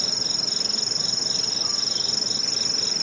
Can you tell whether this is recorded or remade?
recorded